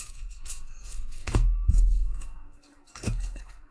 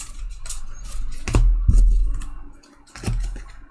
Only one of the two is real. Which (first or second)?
second